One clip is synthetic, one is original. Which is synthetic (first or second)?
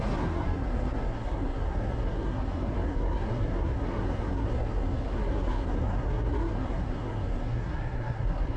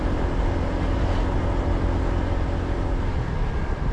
first